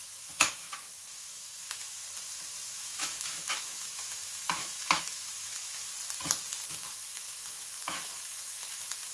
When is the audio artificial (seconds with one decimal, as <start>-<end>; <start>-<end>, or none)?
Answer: 0.0-2.0; 2.7-5.9; 6.7-9.1